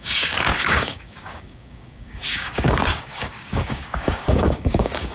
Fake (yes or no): yes